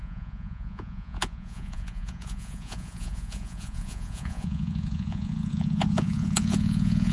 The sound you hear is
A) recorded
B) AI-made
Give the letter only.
B